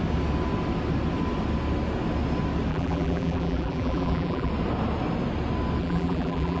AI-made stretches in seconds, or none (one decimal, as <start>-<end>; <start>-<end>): 2.7-4.5; 5.8-6.6